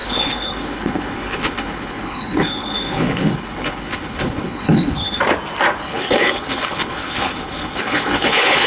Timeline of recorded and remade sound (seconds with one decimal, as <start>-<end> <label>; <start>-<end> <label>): 0.0-5.2 remade; 5.2-5.8 recorded; 5.8-8.7 remade